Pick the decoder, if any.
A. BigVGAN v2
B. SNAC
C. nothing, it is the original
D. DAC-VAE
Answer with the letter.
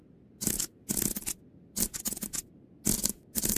C